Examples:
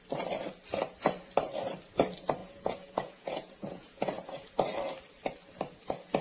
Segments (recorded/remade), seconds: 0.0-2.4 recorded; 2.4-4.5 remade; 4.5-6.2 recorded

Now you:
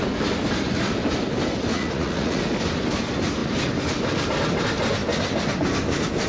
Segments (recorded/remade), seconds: 0.0-1.7 recorded; 1.7-2.4 remade; 2.4-6.3 recorded

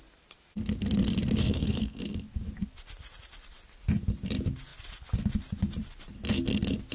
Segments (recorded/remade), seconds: 0.0-1.4 recorded; 1.4-2.0 remade; 2.0-6.9 recorded

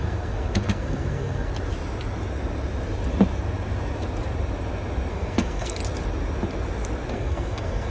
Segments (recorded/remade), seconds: 0.0-1.5 remade; 1.5-5.1 recorded; 5.1-5.8 remade; 5.8-7.1 recorded; 7.1-7.9 remade